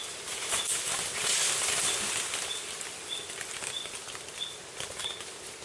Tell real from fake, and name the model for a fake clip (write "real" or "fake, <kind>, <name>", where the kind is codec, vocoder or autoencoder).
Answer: real